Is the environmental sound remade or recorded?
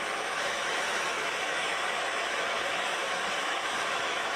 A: remade